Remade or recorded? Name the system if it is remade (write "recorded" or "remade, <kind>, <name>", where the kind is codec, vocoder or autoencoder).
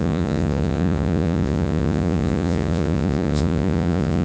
remade, vocoder, Vocos